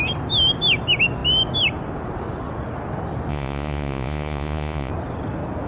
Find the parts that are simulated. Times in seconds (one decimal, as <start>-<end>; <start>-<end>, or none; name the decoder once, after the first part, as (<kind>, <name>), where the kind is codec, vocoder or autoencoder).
3.3-4.9 (vocoder, Vocos)